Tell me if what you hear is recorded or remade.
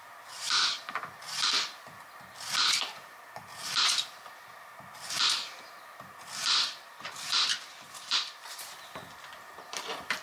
remade